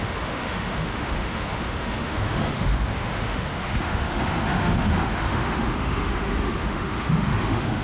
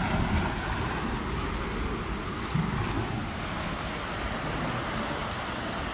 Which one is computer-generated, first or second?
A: first